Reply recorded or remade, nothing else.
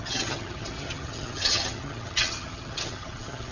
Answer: remade